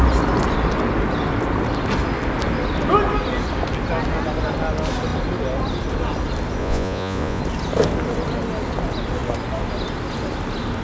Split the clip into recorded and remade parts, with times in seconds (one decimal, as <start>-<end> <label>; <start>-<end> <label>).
0.0-6.6 recorded; 6.6-7.4 remade; 7.4-10.8 recorded